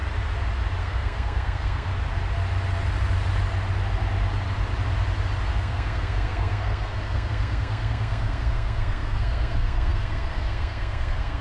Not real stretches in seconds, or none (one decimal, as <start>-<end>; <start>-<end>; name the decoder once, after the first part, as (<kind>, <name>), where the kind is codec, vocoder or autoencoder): 0.8-1.9 (codec, SNAC); 5.5-11.4